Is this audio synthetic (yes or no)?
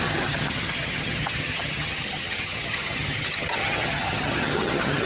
yes